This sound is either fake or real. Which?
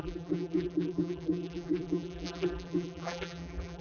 fake